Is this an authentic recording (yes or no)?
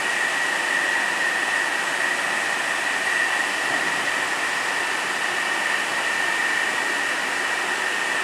yes